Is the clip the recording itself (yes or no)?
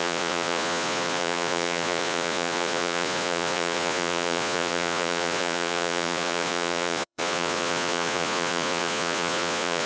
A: no